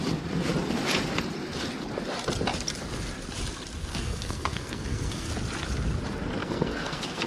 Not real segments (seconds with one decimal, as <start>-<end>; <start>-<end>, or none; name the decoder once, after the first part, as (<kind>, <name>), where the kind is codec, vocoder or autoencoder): 3.8-5.3 (codec, SNAC); 6.4-7.3